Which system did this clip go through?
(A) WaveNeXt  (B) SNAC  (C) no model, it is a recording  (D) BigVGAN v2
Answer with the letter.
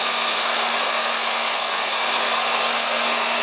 B